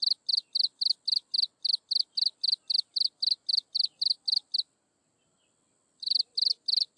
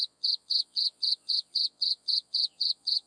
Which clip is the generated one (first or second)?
second